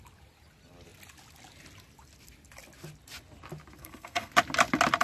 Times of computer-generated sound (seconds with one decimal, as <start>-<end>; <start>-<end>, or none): 3.8-4.3